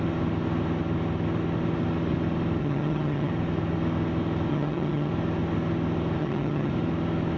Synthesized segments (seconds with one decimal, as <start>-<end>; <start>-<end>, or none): 2.6-3.3; 4.5-5.1; 6.2-6.7